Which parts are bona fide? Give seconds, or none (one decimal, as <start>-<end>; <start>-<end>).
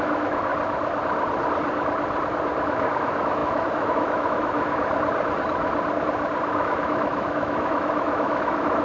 0.5-2.6; 4.8-6.5